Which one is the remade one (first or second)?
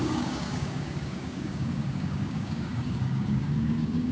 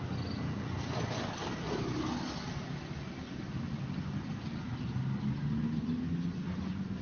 first